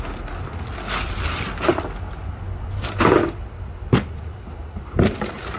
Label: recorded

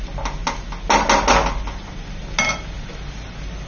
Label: recorded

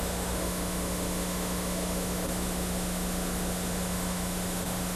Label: remade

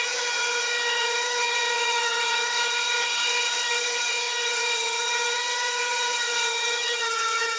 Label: remade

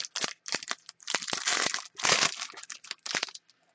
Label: recorded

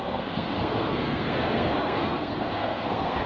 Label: remade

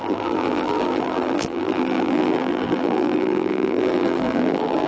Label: remade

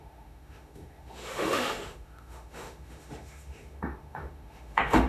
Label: remade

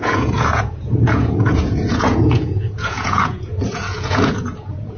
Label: remade